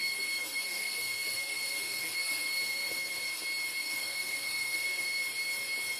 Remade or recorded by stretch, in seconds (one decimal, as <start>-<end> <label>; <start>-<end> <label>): 0.0-3.4 remade; 3.4-3.8 recorded; 3.8-5.2 remade; 5.2-6.0 recorded